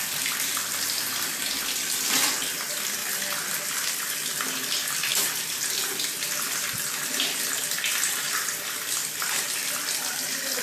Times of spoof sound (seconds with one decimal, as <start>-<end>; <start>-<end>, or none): 5.1-5.6